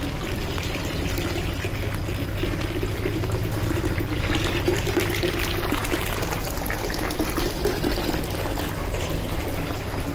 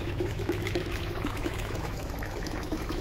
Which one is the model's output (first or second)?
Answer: second